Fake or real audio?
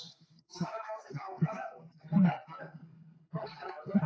fake